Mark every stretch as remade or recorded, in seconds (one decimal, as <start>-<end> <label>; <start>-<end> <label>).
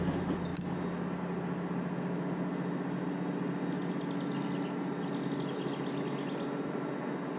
0.0-7.4 recorded